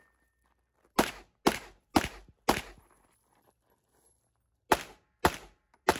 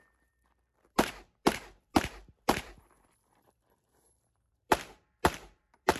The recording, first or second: first